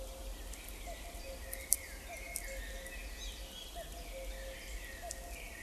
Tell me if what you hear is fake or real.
real